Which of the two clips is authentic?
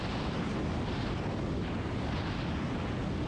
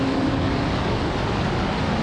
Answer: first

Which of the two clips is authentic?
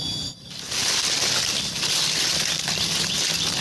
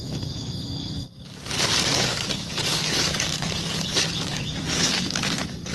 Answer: first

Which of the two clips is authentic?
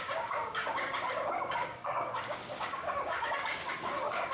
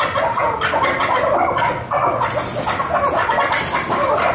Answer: second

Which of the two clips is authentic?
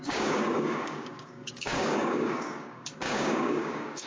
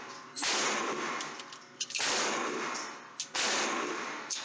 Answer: second